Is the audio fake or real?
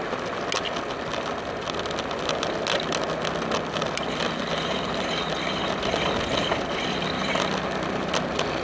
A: real